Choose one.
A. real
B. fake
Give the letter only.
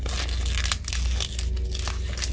A